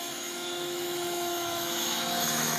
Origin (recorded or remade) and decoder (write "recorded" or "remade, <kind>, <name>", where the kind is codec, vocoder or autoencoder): remade, autoencoder, DAC-VAE